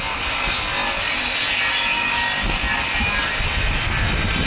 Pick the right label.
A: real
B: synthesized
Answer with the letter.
A